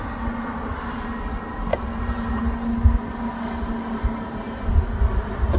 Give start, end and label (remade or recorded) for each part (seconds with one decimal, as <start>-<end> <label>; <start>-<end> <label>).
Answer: 0.0-1.7 recorded; 1.7-2.4 remade; 2.4-5.6 recorded